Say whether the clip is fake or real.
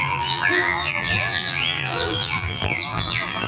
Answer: fake